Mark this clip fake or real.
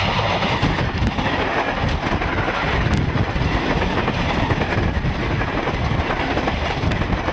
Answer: real